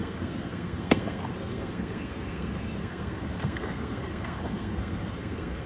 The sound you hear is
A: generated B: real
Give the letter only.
A